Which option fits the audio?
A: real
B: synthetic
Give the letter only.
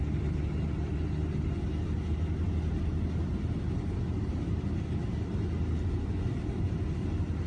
A